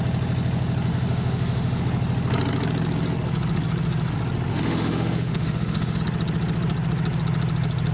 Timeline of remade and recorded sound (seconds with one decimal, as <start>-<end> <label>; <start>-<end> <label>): 0.0-0.9 recorded; 0.9-1.8 remade; 1.8-4.5 recorded; 4.5-6.0 remade; 6.0-7.9 recorded